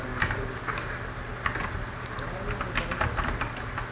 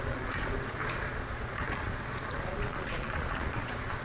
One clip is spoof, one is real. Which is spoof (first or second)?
second